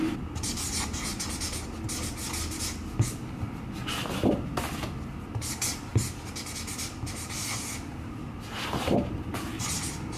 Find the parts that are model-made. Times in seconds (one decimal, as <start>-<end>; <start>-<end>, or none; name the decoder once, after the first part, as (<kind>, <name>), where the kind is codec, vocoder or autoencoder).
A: none